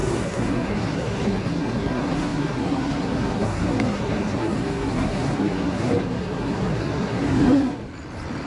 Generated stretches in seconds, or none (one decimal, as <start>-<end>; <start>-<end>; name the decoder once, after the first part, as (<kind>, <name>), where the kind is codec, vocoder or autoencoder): 0.0-7.8 (codec, SNAC)